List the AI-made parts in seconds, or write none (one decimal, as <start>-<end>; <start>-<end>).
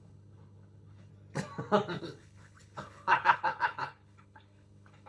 0.0-1.1; 2.0-5.1